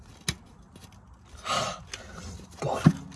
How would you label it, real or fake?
real